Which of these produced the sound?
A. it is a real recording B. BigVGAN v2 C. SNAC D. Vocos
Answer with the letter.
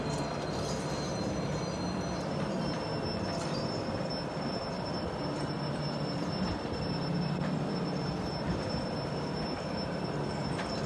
B